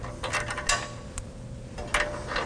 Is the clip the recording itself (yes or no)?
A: yes